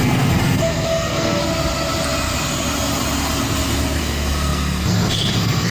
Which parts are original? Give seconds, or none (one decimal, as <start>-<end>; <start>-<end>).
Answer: 1.4-4.0